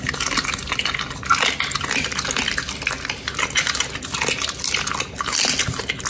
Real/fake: real